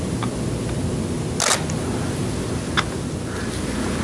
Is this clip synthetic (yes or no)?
no